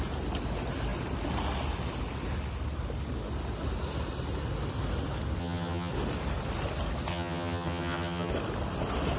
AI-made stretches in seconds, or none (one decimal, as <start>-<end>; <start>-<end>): 5.4-5.9; 7.1-8.3